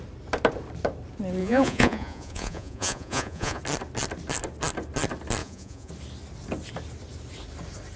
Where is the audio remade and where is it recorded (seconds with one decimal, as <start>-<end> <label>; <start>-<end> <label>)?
0.0-1.4 recorded; 1.4-3.6 remade; 3.6-5.4 recorded; 5.4-5.9 remade; 5.9-8.0 recorded